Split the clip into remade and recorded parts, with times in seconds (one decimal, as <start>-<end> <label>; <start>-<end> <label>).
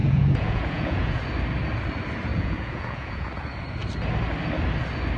0.0-1.2 remade; 1.2-2.3 recorded; 2.3-3.3 remade; 3.3-5.2 recorded